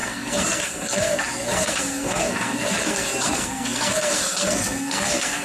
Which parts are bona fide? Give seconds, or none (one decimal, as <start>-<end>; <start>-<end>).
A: none